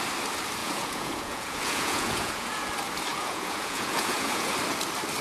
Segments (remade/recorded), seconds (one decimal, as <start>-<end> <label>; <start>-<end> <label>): 0.0-0.6 recorded; 0.6-2.7 remade; 2.7-3.1 recorded; 3.1-4.5 remade; 4.5-5.2 recorded